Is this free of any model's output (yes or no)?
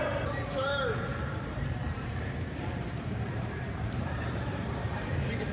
no